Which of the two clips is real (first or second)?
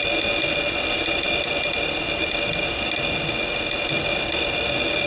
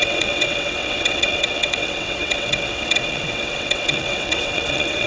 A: first